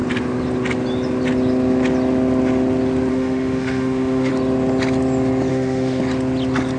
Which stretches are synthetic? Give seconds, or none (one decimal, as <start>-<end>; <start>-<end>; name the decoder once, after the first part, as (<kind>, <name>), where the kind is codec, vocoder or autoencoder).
3.1-4.3 (autoencoder, DAC-VAE); 5.5-6.0